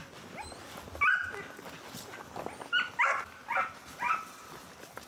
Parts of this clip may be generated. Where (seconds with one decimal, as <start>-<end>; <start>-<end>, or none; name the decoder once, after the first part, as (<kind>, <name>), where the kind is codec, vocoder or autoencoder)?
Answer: none